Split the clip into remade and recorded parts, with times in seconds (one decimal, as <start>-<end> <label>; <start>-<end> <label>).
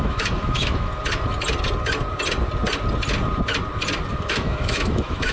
0.0-0.9 remade; 0.9-4.1 recorded; 4.1-5.3 remade